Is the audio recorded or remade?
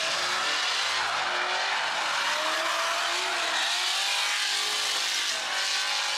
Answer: recorded